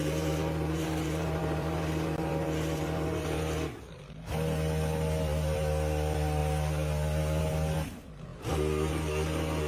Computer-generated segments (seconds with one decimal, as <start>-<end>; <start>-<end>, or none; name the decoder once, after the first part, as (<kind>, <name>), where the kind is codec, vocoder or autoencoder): 0.0-3.4 (vocoder, BigVGAN v2)